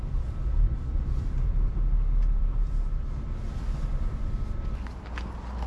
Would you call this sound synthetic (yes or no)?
yes